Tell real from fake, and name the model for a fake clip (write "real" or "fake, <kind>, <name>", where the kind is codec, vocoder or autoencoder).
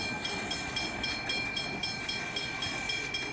real